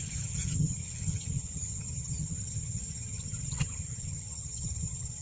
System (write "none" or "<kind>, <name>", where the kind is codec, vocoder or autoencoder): vocoder, HiFi-GAN